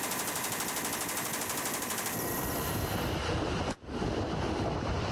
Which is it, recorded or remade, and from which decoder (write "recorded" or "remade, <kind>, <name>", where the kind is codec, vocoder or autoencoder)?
recorded